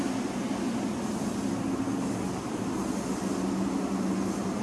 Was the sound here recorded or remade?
recorded